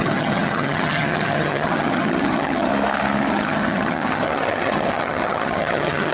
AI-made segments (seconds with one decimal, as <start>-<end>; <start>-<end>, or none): 0.0-2.7; 3.3-6.1